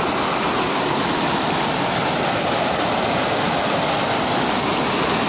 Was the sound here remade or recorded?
recorded